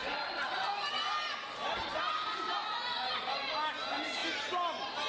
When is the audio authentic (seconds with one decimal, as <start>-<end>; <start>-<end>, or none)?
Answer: 0.0-5.1